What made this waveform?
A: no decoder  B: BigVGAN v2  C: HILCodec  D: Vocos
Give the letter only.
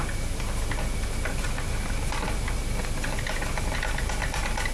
A